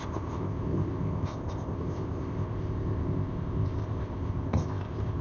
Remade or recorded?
remade